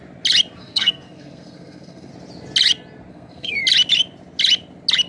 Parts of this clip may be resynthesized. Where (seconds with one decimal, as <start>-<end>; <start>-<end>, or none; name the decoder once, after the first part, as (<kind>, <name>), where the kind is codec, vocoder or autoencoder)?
0.6-2.1 (codec, SNAC); 3.1-3.6